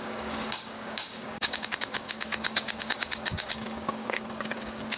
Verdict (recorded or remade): remade